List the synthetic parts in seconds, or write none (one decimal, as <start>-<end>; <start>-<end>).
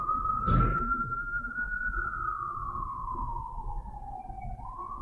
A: 0.7-1.5